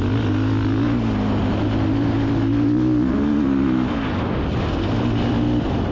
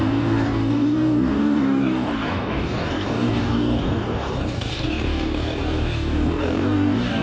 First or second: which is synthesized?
second